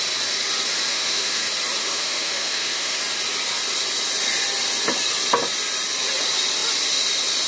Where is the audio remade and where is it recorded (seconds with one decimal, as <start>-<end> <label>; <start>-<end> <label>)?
0.0-0.9 recorded; 0.9-1.4 remade; 1.4-1.8 recorded; 1.8-3.0 remade; 3.0-7.5 recorded